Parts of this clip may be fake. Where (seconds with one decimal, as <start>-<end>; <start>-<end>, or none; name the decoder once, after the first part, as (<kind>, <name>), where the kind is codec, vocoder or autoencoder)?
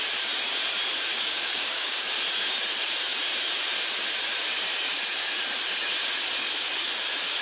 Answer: 1.1-2.1 (codec, DAC)